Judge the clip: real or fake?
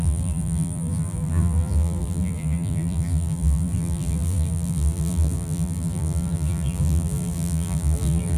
fake